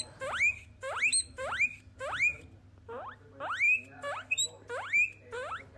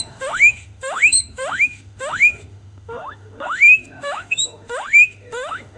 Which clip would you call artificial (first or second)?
second